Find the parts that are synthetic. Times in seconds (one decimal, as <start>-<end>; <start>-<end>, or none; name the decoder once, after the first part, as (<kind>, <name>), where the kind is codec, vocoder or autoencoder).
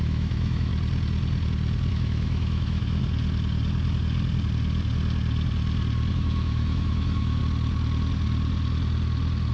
0.0-0.7 (autoencoder, DAC-VAE); 1.9-3.0; 6.1-7.4